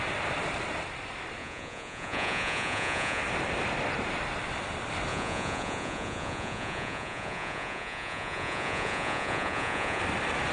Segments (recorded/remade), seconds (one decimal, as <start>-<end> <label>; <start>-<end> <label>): 0.0-1.4 recorded; 1.4-3.2 remade; 3.2-5.1 recorded; 5.1-10.0 remade; 10.0-10.5 recorded